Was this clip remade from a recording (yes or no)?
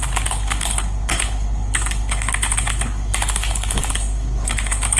yes